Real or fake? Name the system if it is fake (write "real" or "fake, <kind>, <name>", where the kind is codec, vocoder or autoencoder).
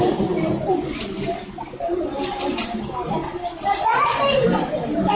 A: fake, vocoder, BigVGAN v2